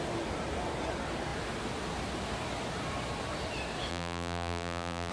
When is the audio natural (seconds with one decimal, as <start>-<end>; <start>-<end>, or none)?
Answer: 0.0-3.9